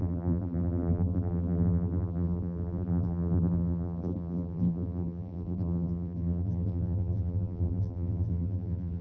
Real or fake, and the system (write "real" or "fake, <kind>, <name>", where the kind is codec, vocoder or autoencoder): fake, vocoder, BigVGAN v2